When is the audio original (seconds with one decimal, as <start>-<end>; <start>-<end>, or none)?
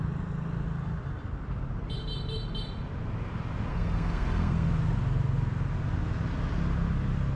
0.0-3.7; 4.7-7.4